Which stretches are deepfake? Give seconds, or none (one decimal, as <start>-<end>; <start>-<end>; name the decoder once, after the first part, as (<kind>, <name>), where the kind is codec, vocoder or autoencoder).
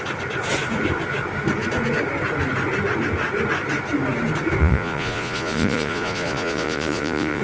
4.6-7.4 (vocoder, Vocos)